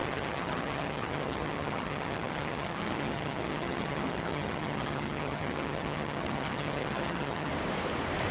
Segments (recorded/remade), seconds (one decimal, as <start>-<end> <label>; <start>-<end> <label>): 0.0-7.5 remade; 7.5-8.3 recorded